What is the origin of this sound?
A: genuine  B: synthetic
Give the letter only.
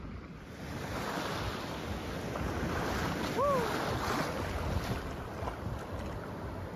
A